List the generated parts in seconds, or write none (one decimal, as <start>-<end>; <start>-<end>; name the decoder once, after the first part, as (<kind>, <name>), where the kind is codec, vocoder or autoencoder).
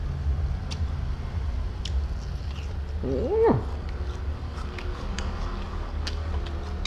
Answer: 3.7-6.4 (codec, DAC)